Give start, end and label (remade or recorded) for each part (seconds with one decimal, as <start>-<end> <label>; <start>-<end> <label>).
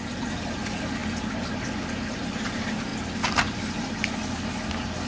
0.0-5.1 recorded